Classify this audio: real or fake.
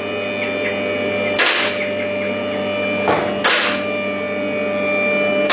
real